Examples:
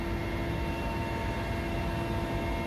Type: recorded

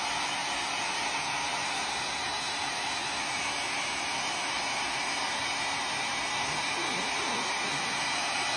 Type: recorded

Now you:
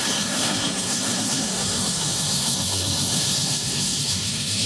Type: remade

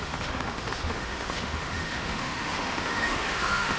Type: remade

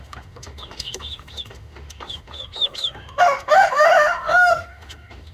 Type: remade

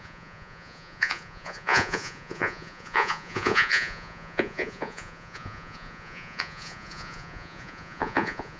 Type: remade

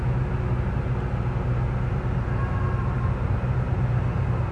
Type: recorded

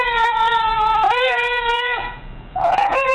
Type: remade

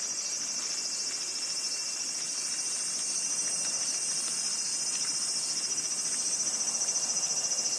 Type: recorded